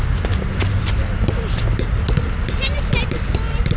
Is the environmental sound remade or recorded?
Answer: recorded